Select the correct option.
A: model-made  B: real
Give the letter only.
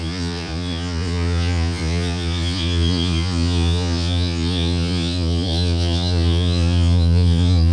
A